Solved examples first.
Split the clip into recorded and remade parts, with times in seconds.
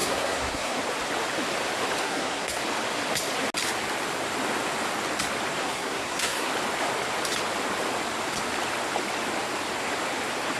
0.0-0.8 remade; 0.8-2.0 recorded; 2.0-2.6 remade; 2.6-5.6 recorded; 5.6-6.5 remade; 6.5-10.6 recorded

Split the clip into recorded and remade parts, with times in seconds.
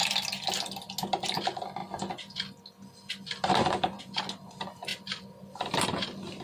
0.0-0.6 remade; 0.6-4.9 recorded; 4.9-6.4 remade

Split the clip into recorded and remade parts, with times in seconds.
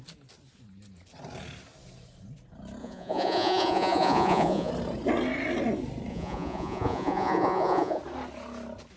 0.0-2.8 recorded; 2.8-4.7 remade; 4.7-6.1 recorded; 6.1-8.0 remade; 8.0-9.0 recorded